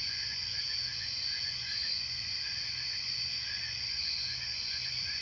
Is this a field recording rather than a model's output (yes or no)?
no